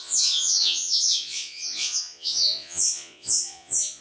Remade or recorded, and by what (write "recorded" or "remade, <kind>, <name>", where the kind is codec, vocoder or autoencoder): remade, vocoder, Vocos